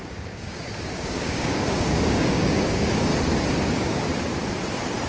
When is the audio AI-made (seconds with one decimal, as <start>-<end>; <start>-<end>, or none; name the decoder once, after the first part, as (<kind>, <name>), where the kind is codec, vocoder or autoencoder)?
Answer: 0.0-3.1 (codec, DAC); 3.6-4.1